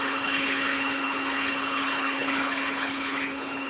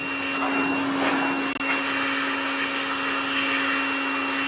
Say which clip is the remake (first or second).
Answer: first